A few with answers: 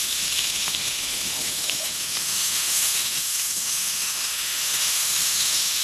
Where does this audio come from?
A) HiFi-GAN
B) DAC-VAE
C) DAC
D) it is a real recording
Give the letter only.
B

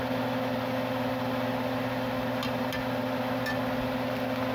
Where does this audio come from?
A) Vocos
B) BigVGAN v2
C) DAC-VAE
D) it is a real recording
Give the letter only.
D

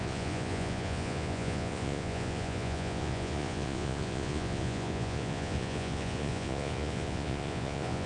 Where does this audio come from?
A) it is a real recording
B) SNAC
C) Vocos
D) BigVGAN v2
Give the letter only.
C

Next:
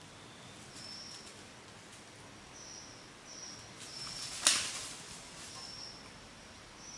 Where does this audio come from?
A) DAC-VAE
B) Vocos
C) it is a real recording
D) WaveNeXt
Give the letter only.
C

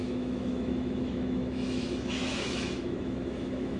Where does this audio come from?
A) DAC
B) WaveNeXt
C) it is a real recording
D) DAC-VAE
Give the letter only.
D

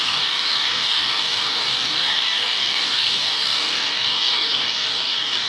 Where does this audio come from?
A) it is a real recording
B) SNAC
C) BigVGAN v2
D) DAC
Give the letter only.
D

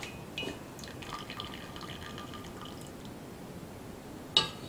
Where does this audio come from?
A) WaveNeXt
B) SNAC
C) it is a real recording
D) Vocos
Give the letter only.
C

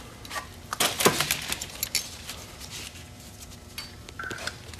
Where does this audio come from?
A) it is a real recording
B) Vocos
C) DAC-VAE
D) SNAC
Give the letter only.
A